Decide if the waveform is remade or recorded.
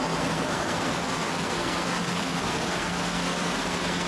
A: remade